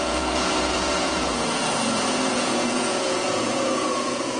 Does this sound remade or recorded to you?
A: remade